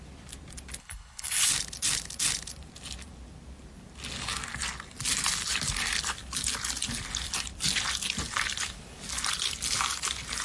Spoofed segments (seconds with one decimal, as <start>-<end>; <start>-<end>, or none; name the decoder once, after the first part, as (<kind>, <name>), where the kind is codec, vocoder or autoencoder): 0.8-1.5 (codec, HILCodec)